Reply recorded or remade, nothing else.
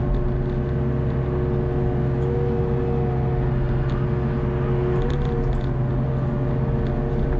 recorded